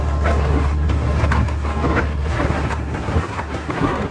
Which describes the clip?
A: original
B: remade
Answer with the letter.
B